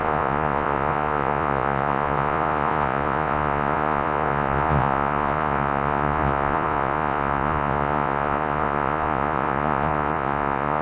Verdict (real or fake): fake